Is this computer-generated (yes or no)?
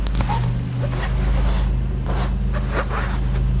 no